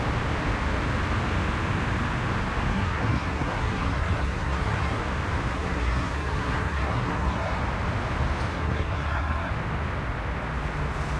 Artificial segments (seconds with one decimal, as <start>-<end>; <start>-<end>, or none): 2.7-5.0; 5.5-7.6; 8.5-9.5